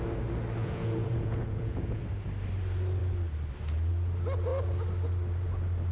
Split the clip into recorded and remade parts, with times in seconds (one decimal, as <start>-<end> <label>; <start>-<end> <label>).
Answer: 0.0-0.6 recorded; 0.6-2.0 remade; 2.0-5.9 recorded